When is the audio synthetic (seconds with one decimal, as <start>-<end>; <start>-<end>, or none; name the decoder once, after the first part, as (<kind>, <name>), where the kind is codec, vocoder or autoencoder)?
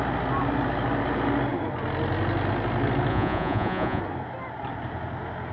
3.1-4.0 (vocoder, Vocos)